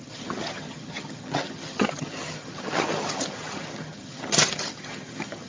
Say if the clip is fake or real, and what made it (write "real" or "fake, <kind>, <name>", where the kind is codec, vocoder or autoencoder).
fake, vocoder, HiFi-GAN